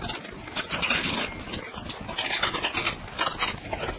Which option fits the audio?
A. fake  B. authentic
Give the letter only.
B